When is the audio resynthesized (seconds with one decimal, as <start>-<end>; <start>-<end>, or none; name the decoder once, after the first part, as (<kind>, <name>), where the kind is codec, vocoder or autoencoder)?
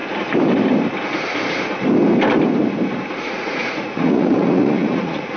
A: 3.2-5.4 (vocoder, Vocos)